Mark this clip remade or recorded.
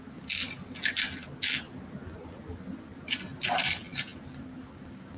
recorded